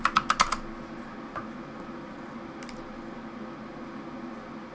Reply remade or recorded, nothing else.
recorded